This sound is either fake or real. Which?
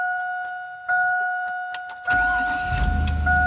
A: real